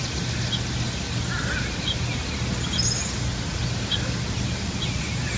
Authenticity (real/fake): real